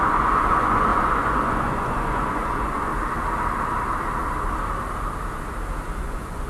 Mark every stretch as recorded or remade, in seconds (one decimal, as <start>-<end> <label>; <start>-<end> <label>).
0.0-2.9 remade; 2.9-6.0 recorded; 6.0-6.5 remade